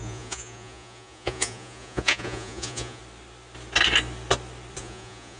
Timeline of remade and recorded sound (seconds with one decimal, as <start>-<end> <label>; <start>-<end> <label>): 0.0-3.0 remade; 3.0-4.8 recorded; 4.8-5.4 remade